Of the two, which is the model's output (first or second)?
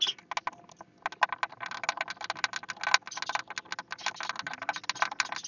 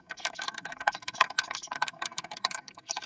second